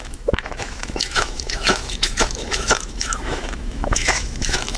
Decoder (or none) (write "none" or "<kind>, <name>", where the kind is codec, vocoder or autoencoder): autoencoder, DAC-VAE